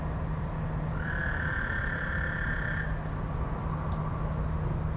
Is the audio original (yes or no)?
yes